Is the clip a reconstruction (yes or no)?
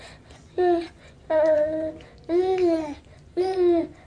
yes